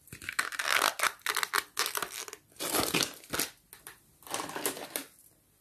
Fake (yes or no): no